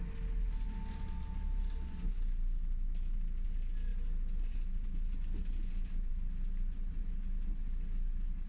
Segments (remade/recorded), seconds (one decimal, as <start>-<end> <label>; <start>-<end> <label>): 0.0-8.5 recorded